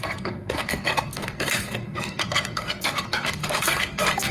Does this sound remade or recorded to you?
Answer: remade